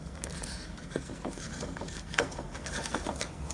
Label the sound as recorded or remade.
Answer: remade